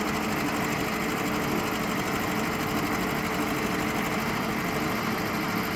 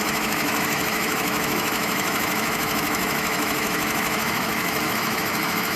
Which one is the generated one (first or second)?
second